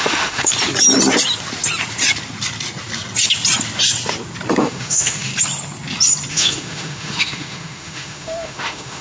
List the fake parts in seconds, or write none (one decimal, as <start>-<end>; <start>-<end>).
0.0-0.5; 4.6-5.3; 6.3-9.0